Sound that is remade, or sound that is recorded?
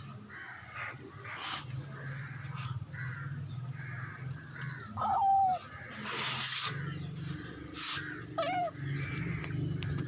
recorded